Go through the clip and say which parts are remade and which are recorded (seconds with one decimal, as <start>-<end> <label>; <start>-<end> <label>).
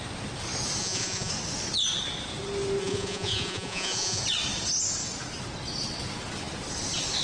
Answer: 0.0-0.8 recorded; 0.8-1.3 remade; 1.3-2.8 recorded; 2.8-4.2 remade; 4.2-7.2 recorded